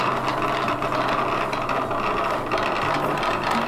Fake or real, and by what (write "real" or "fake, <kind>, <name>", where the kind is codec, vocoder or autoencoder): real